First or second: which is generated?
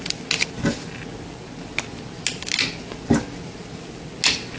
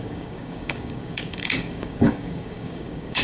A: second